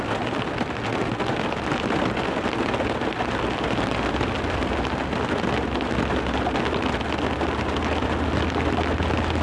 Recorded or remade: recorded